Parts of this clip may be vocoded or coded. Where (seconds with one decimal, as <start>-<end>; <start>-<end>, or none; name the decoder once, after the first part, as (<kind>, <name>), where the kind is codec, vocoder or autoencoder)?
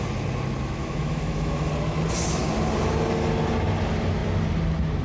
0.8-1.7 (autoencoder, DAC-VAE)